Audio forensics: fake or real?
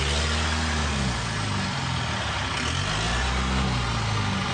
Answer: real